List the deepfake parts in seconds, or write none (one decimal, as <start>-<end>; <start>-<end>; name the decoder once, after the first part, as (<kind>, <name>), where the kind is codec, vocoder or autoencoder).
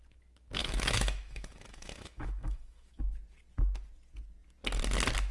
0.6-3.0 (autoencoder, DAC-VAE)